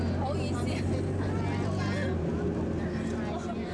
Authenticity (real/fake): real